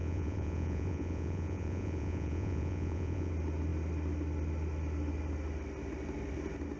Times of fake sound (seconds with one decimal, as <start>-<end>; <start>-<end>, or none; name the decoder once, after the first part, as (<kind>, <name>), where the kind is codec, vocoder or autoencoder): 0.0-3.3 (vocoder, Vocos)